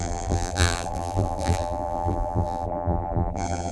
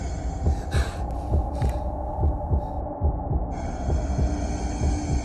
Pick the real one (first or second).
second